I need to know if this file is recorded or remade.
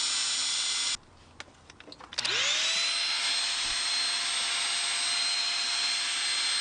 recorded